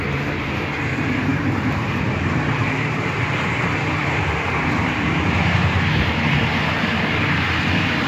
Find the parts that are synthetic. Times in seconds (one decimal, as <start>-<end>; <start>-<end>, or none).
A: 0.0-8.1